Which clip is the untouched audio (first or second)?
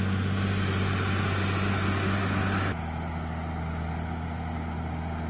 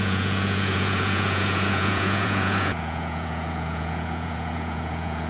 first